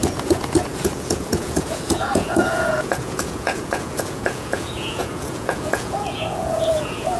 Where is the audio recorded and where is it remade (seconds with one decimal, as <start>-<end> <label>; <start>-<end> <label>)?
0.0-7.2 remade